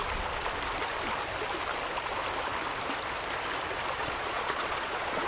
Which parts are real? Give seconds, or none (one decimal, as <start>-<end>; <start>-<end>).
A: 0.0-4.0